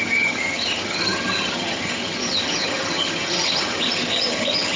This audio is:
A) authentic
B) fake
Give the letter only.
B